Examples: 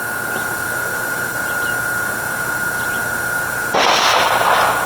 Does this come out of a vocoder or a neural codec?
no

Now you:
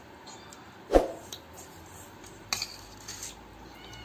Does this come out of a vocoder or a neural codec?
no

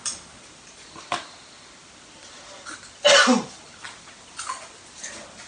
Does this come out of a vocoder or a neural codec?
no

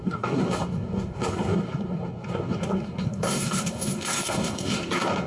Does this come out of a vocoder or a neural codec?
yes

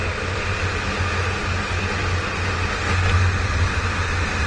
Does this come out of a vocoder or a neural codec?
no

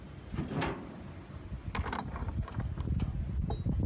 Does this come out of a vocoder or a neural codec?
no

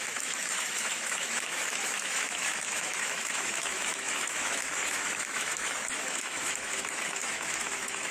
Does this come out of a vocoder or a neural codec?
yes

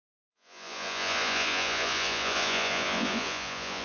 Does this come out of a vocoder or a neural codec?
yes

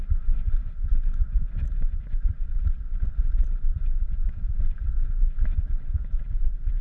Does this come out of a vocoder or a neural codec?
yes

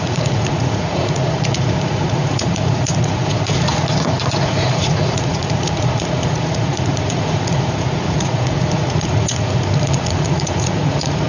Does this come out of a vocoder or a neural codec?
yes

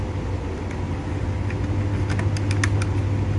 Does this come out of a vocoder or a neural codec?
no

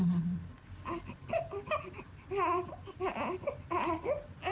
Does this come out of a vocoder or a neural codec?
no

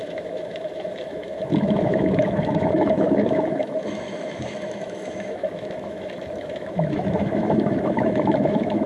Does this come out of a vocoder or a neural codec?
yes